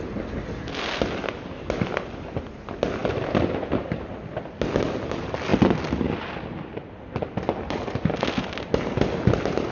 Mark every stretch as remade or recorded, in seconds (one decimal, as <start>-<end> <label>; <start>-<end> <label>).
0.0-9.7 recorded